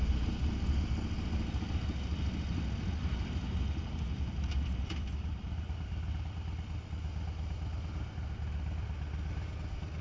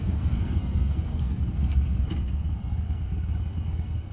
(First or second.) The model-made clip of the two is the second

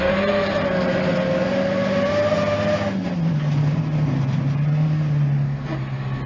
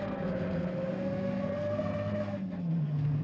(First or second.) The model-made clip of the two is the second